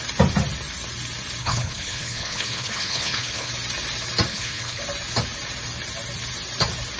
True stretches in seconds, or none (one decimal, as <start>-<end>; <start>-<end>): 0.0-1.4; 3.5-4.3; 4.8-7.0